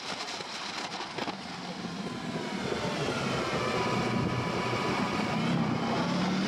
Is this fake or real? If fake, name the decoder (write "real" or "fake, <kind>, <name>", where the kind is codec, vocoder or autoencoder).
real